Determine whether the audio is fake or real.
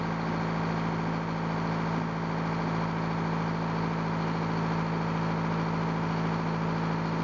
real